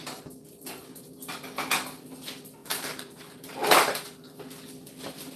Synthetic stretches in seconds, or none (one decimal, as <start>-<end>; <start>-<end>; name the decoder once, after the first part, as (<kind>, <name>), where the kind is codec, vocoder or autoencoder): 2.6-3.2 (vocoder, BigVGAN v2); 3.6-4.3